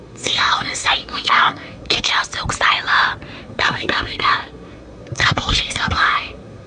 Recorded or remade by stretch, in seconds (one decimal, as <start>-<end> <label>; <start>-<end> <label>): 0.0-2.1 remade; 2.1-3.4 recorded; 3.4-6.7 remade

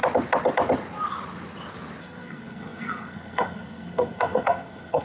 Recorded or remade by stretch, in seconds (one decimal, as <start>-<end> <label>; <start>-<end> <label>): 0.0-2.0 recorded; 2.0-5.0 remade